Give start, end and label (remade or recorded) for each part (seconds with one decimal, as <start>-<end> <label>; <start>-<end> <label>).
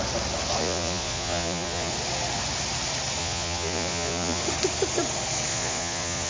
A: 0.0-0.6 recorded; 0.6-1.9 remade; 1.9-3.2 recorded; 3.2-4.4 remade; 4.4-5.5 recorded; 5.5-6.3 remade